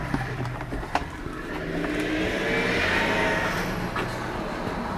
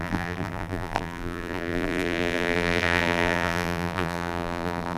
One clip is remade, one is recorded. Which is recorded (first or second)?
first